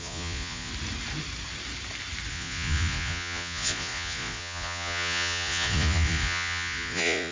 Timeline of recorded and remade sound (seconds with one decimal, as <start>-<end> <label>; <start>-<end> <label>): 0.0-0.7 remade; 0.7-2.3 recorded; 2.3-7.3 remade